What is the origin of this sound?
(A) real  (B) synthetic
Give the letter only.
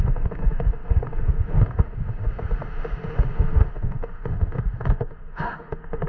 B